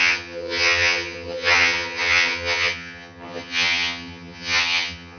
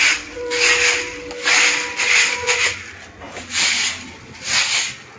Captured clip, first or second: second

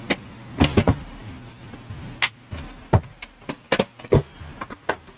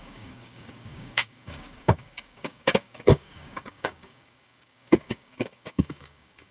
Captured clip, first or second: first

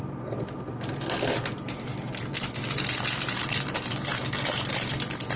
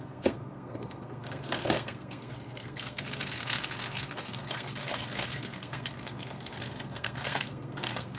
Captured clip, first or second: first